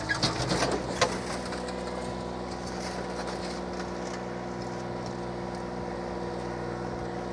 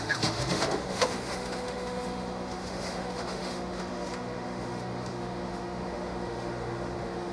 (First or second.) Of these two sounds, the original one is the first